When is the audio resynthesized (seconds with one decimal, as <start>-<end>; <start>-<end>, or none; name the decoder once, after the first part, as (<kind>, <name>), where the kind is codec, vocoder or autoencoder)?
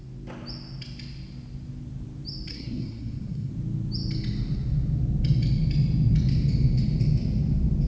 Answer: 2.5-3.5 (codec, SNAC)